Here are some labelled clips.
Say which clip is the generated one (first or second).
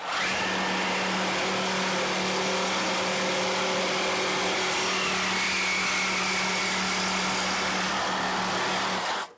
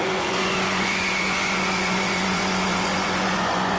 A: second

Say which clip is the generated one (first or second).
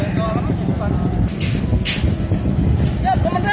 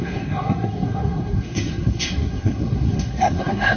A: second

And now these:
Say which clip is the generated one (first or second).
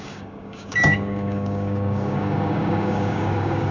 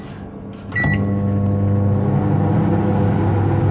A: first